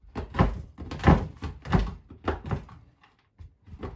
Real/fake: real